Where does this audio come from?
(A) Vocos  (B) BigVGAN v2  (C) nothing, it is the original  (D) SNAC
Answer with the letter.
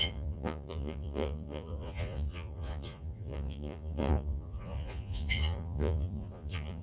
A